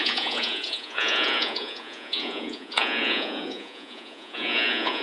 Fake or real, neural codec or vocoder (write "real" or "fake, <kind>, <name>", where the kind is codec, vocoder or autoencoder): fake, vocoder, Vocos